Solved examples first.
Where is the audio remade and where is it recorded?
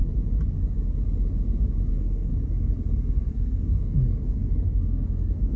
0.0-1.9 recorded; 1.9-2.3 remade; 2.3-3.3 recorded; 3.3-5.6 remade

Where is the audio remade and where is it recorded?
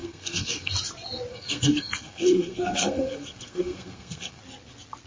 0.0-0.7 remade; 0.7-1.3 recorded; 1.3-4.4 remade; 4.4-5.1 recorded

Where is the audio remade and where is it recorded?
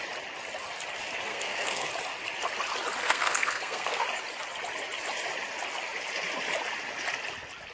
0.0-1.3 recorded; 1.3-1.9 remade; 1.9-3.0 recorded; 3.0-4.0 remade; 4.0-7.7 recorded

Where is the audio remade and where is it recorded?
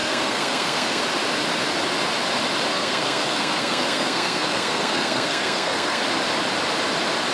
0.0-1.0 remade; 1.0-2.7 recorded; 2.7-6.0 remade; 6.0-7.3 recorded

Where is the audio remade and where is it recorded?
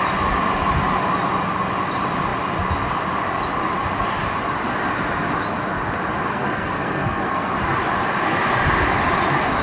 0.0-6.3 recorded; 6.3-7.5 remade; 7.5-9.6 recorded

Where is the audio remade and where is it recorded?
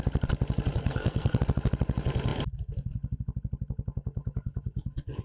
0.0-0.8 recorded; 0.8-1.4 remade; 1.4-5.2 recorded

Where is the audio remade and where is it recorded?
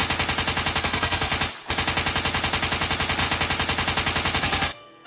0.0-0.8 recorded; 0.8-1.3 remade; 1.3-4.4 recorded; 4.4-5.1 remade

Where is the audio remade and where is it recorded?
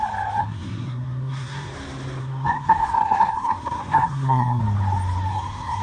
0.0-0.4 recorded; 0.4-1.7 remade; 1.7-2.2 recorded; 2.2-4.6 remade; 4.6-5.3 recorded; 5.3-5.8 remade